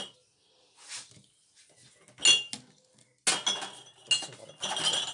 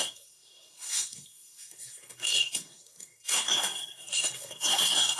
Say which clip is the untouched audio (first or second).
first